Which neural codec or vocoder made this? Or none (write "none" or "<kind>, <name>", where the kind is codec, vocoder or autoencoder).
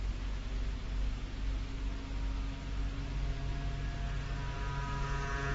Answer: none